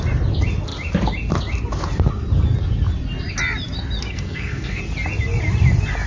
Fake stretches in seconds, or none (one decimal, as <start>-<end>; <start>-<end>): 4.1-4.8